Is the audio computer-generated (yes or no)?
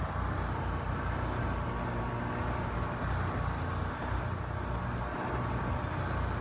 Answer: no